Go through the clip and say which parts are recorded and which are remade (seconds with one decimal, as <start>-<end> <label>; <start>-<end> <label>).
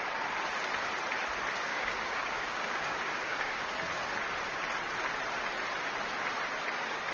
0.0-1.7 recorded; 1.7-3.6 remade; 3.6-7.1 recorded